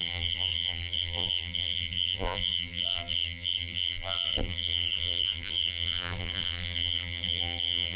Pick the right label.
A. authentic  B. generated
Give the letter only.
B